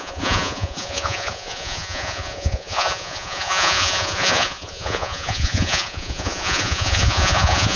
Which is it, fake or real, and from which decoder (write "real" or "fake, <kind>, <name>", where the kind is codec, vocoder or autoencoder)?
fake, vocoder, Vocos